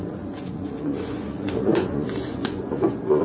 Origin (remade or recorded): remade